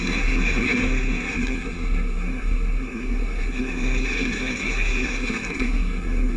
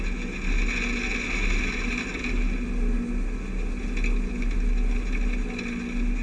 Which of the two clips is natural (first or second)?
second